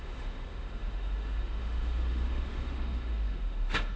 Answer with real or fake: fake